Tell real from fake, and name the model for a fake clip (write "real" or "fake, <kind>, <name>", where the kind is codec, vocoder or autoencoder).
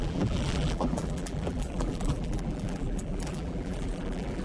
fake, vocoder, BigVGAN v2